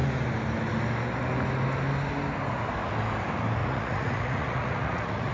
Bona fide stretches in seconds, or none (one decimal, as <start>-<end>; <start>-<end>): 0.0-3.6